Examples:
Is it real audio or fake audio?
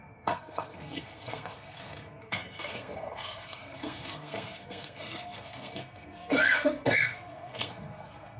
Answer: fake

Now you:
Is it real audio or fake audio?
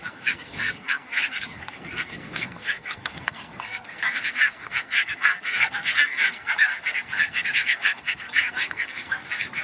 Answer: fake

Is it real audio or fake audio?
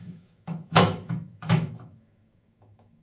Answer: fake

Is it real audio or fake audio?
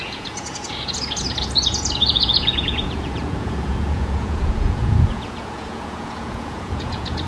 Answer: fake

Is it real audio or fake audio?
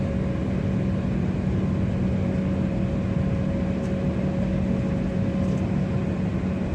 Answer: real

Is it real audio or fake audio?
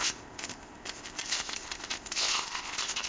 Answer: fake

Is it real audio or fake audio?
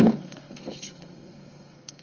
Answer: fake